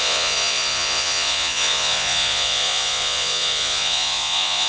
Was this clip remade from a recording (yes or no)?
yes